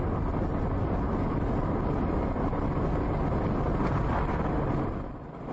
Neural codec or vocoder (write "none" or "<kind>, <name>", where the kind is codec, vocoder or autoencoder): none